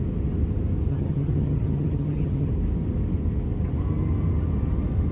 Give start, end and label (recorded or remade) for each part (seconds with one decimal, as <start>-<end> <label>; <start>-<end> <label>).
0.0-0.9 recorded; 0.9-2.5 remade; 2.5-5.1 recorded